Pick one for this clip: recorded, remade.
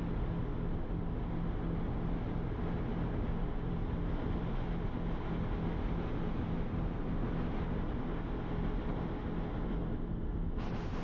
recorded